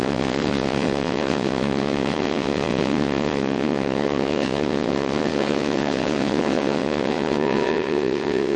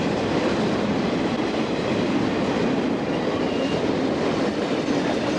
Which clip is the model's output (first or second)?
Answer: first